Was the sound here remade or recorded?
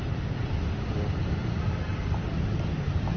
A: recorded